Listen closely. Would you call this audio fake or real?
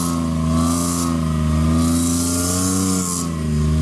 real